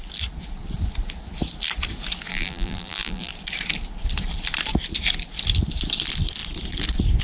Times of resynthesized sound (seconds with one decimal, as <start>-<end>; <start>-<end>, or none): 2.3-3.3